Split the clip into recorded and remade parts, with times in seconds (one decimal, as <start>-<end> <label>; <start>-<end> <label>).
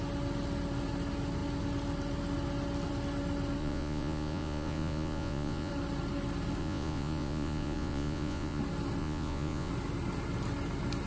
0.0-3.6 recorded; 3.6-5.7 remade; 5.7-6.6 recorded; 6.6-8.6 remade; 8.6-9.0 recorded; 9.0-9.7 remade; 9.7-11.1 recorded